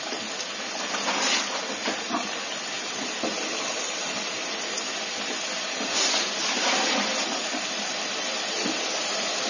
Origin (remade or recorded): recorded